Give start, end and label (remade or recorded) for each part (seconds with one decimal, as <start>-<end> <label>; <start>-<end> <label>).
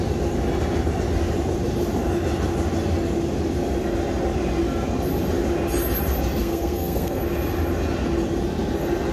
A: 0.0-6.4 recorded; 6.4-7.2 remade; 7.2-9.1 recorded